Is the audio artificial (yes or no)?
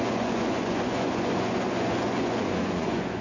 yes